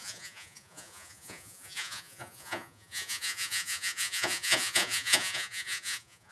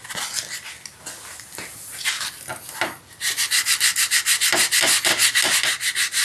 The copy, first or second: first